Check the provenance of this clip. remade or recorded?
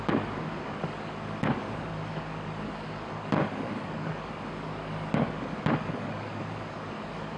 remade